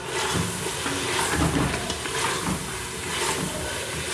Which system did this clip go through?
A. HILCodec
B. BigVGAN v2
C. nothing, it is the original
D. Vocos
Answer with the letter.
C